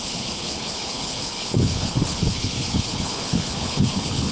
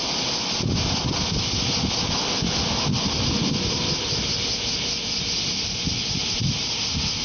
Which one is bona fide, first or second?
second